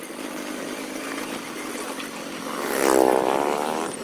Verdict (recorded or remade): recorded